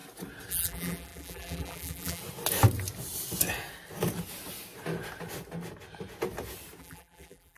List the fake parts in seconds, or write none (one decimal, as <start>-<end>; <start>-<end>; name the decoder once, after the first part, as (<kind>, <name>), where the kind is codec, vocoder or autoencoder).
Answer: 0.5-2.2 (vocoder, BigVGAN v2); 6.8-7.6